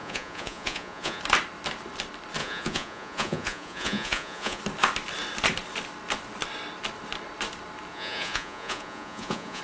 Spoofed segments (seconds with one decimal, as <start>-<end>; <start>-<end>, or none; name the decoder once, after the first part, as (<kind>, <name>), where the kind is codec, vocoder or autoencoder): 0.0-1.2 (vocoder, Vocos); 2.4-4.6; 7.9-9.6